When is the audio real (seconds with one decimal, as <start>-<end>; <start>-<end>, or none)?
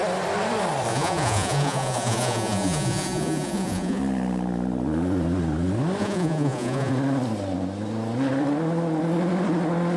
0.0-0.9; 4.0-6.0; 6.9-10.0